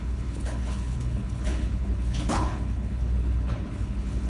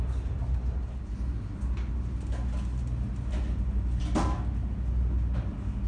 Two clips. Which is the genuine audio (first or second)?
second